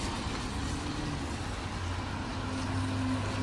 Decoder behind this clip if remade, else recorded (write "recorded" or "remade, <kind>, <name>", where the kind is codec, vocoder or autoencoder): recorded